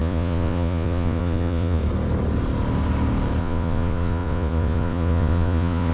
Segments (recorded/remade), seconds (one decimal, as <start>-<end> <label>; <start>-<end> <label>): 0.0-1.8 remade; 1.8-3.4 recorded; 3.4-5.9 remade